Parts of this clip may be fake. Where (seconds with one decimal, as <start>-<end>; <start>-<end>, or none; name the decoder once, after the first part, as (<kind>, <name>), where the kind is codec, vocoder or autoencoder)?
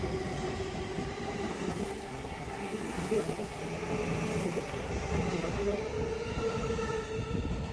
1.5-3.6 (codec, SNAC); 4.4-5.8